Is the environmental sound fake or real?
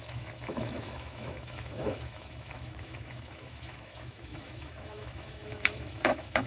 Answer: fake